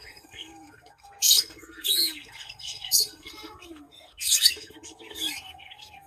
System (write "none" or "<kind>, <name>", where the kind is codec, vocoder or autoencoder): codec, SNAC